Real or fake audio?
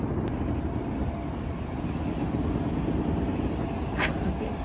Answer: real